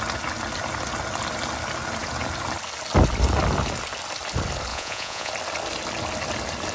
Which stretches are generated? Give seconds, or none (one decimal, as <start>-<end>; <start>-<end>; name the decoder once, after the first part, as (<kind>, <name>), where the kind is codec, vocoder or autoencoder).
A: 4.7-5.3 (vocoder, Vocos)